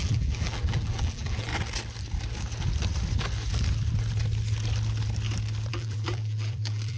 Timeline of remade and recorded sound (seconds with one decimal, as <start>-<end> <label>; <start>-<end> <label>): 0.0-1.5 remade; 1.5-5.7 recorded; 5.7-7.0 remade